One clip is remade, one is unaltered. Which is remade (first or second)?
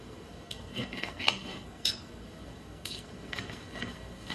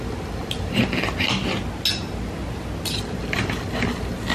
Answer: first